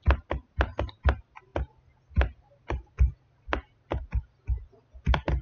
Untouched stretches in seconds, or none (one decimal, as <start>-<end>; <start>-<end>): 0.0-5.4